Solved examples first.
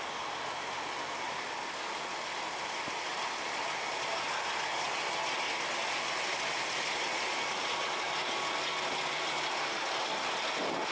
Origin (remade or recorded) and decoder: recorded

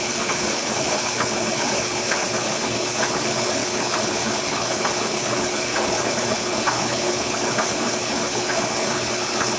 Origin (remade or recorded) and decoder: remade, codec, HILCodec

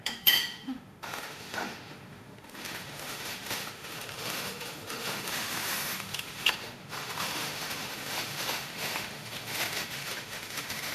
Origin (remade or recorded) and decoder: remade, autoencoder, DAC-VAE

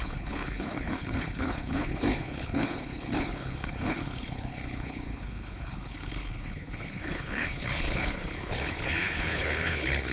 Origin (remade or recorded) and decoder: remade, codec, HILCodec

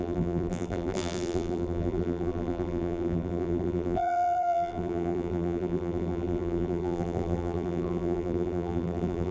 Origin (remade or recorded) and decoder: remade, vocoder, BigVGAN v2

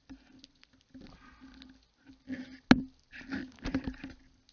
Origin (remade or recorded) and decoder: recorded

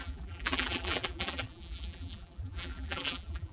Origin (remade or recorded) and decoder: remade, vocoder, BigVGAN v2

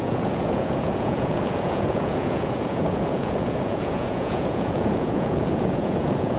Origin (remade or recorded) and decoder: remade, vocoder, Vocos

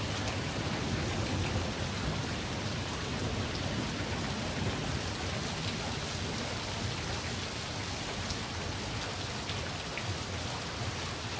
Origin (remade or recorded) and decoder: recorded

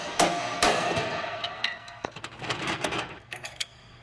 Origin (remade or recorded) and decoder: remade, codec, SNAC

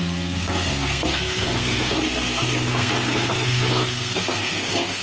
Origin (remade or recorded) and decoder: remade, codec, SNAC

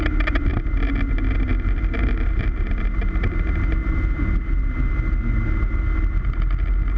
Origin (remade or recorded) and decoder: recorded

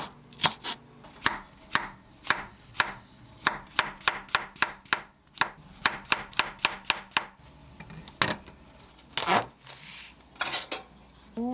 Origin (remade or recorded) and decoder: recorded